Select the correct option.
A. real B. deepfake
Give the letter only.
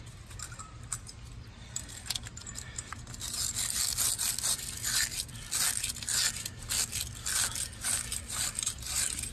A